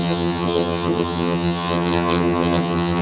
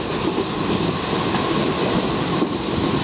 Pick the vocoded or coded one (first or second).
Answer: first